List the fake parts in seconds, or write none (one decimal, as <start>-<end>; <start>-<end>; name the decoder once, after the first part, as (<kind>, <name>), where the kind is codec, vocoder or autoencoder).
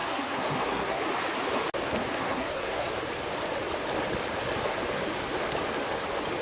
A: 0.0-1.0 (codec, SNAC); 2.0-2.9